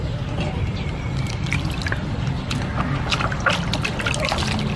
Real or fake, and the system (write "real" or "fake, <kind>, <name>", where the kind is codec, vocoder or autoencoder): real